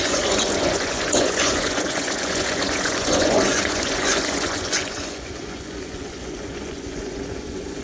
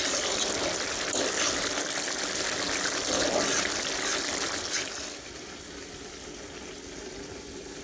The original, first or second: second